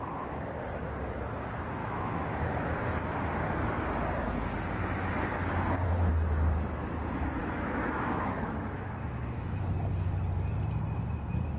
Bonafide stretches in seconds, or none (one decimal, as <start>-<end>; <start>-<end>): 0.0-1.8; 2.7-7.4; 9.6-11.6